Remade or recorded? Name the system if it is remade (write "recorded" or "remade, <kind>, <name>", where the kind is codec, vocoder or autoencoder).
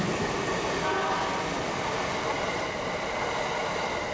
recorded